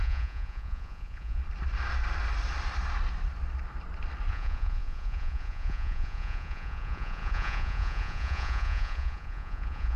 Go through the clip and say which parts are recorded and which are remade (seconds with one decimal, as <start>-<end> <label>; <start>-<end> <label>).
0.0-1.4 remade; 1.4-4.3 recorded; 4.3-10.0 remade